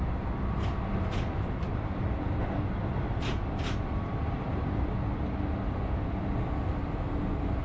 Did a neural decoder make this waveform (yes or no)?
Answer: no